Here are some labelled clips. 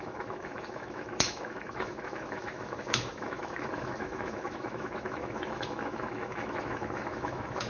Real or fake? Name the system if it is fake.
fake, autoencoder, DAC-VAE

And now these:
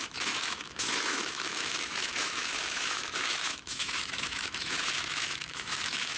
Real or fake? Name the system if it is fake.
fake, autoencoder, DAC-VAE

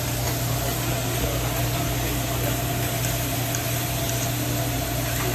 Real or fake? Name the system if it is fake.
real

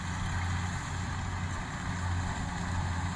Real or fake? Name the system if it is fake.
real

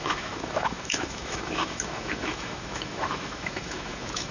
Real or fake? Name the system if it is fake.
fake, autoencoder, DAC-VAE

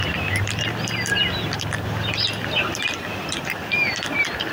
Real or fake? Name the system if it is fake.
real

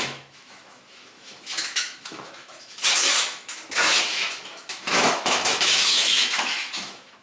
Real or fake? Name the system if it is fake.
fake, autoencoder, DAC-VAE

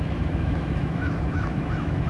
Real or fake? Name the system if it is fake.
fake, autoencoder, DAC-VAE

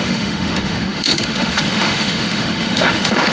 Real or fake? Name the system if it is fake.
fake, autoencoder, DAC-VAE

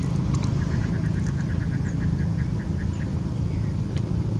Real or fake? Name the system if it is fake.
real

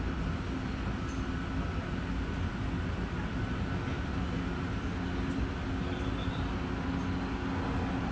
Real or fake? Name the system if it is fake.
real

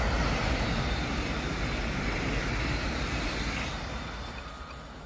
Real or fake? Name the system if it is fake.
real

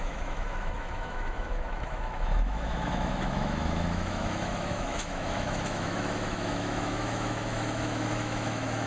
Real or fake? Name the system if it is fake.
fake, autoencoder, DAC-VAE